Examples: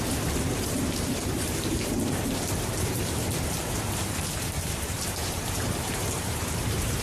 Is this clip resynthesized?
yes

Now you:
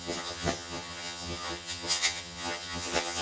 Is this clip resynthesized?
yes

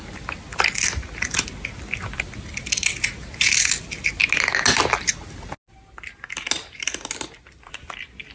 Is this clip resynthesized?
no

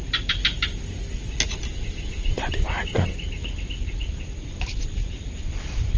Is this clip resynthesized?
no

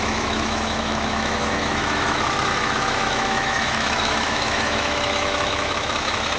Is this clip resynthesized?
yes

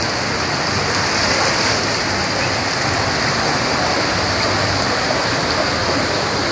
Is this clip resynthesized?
no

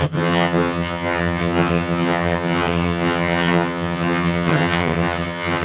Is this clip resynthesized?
yes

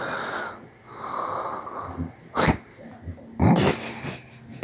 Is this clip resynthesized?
no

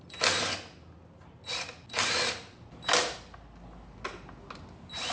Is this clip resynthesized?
no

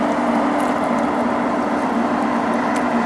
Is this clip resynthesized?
no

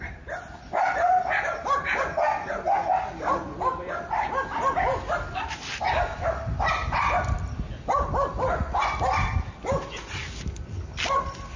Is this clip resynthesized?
no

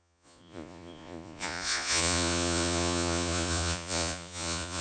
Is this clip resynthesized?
yes